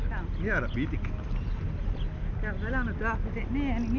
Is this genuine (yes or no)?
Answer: yes